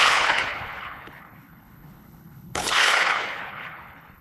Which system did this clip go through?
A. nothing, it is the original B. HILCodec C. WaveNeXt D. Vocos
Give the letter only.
B